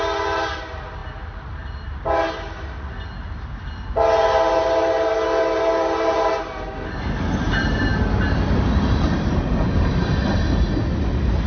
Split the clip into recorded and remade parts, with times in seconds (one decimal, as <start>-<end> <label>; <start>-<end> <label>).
0.0-11.5 recorded